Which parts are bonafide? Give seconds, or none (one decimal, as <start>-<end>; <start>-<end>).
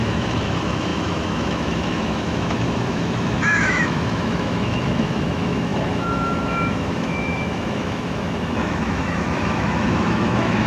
none